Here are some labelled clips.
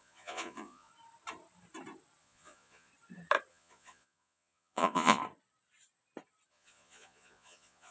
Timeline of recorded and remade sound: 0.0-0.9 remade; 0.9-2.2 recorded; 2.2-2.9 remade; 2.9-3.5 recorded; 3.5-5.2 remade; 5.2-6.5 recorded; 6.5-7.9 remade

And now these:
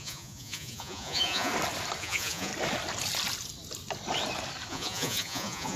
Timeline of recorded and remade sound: 0.0-1.5 remade; 1.5-2.0 recorded; 2.0-2.5 remade; 2.5-4.7 recorded; 4.7-5.8 remade